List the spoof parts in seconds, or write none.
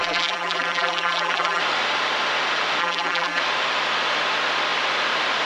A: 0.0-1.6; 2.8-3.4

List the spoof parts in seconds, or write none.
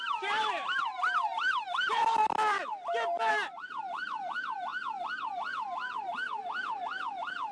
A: 0.0-2.2; 3.3-4.7; 5.5-6.4; 7.1-7.5